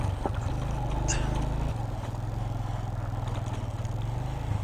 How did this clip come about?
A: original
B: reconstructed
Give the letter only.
A